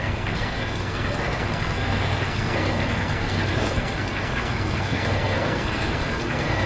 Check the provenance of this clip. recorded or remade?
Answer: remade